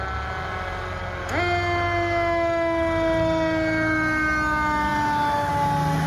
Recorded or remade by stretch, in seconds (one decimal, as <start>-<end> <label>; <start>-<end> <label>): 0.0-6.1 recorded